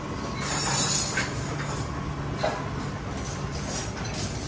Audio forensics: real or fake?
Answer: real